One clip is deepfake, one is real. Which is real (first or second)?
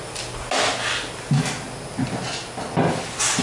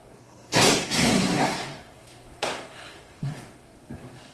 first